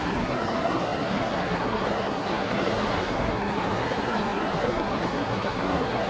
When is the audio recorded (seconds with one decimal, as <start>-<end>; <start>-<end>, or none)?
none